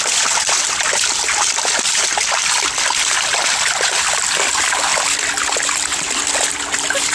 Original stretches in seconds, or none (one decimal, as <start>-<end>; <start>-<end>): 4.9-6.0